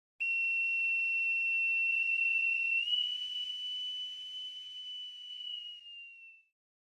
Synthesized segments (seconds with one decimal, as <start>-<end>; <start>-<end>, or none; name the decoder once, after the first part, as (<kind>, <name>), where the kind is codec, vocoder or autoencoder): 1.9-3.5 (vocoder, Vocos); 5.3-5.8